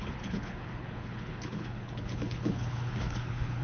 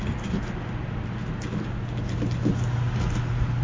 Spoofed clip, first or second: first